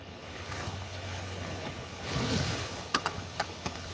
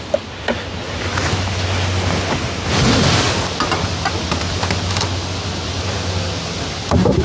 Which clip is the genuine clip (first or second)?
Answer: second